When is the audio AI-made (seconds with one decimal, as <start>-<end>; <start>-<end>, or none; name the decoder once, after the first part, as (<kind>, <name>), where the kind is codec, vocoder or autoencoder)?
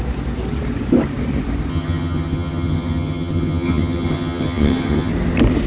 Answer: 1.7-5.1 (vocoder, HiFi-GAN)